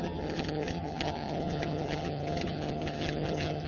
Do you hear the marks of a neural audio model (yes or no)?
yes